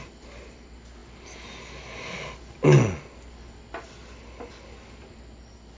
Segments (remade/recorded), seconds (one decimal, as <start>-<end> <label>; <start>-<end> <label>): 0.0-5.8 recorded